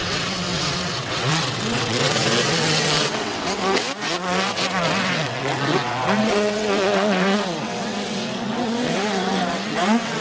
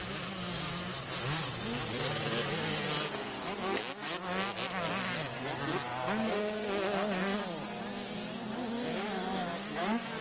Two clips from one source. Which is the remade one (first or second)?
first